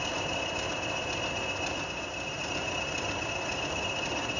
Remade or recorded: recorded